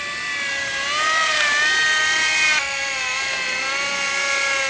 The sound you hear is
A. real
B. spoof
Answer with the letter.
A